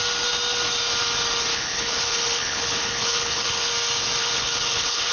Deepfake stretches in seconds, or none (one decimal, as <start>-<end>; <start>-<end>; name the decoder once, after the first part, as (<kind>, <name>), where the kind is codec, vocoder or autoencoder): 1.5-3.7 (codec, HILCodec); 4.2-5.1